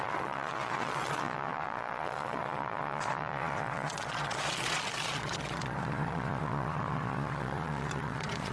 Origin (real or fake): fake